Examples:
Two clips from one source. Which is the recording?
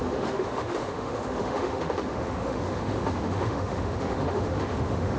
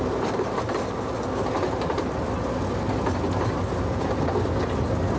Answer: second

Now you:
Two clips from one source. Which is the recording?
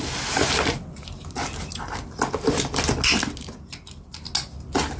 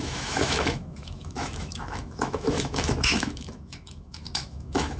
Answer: first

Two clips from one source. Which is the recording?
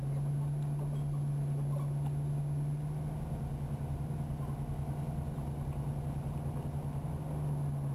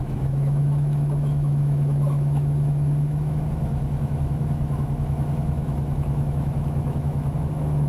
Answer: first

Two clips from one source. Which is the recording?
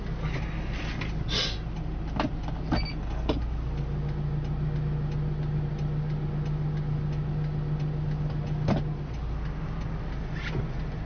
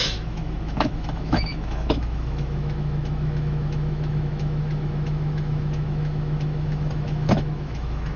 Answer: first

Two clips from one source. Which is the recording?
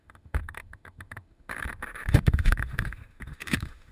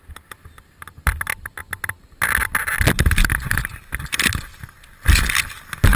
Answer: second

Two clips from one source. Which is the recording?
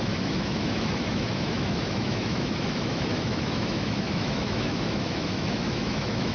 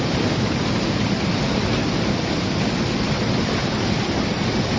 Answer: second